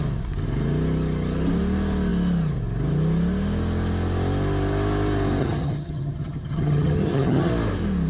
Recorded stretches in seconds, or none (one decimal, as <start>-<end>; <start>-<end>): 0.0-5.4; 7.5-8.1